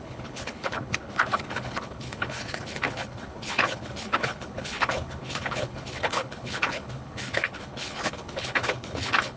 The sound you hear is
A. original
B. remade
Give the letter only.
B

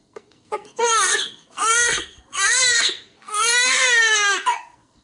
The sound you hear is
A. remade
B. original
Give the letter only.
A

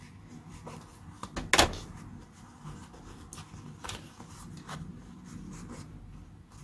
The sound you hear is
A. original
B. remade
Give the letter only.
A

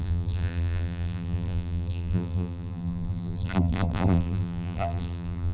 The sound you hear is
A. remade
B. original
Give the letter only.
A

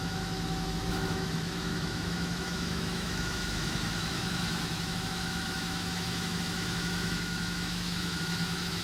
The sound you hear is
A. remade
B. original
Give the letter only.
A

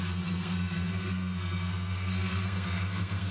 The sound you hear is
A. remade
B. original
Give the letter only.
A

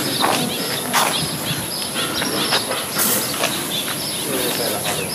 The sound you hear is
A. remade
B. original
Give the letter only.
B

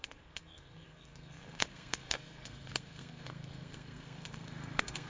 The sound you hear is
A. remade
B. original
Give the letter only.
A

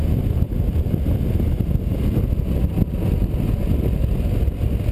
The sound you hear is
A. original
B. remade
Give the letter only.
A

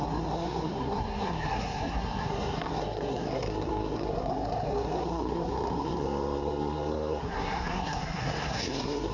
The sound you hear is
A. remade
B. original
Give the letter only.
A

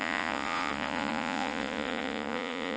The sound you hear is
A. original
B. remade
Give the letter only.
B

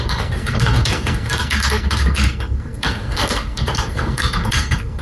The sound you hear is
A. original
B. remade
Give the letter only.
B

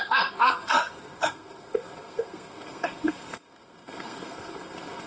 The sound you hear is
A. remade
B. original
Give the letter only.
A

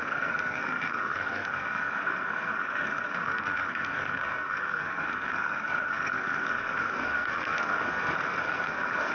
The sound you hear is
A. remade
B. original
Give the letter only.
A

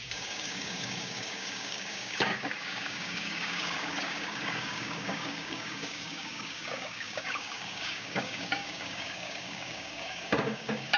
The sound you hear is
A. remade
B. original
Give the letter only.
A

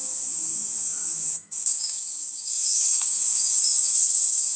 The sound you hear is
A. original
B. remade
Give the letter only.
B